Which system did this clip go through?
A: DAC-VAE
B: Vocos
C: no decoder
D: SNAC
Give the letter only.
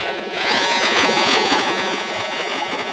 B